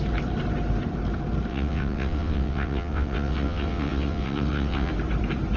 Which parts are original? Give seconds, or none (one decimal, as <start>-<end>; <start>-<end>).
0.0-1.5; 4.9-5.6